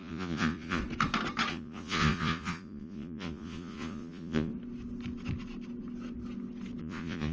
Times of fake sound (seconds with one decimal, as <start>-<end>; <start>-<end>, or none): 0.0-0.8; 1.5-4.5; 6.8-7.3